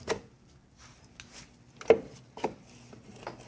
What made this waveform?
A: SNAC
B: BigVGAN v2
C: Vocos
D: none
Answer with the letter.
D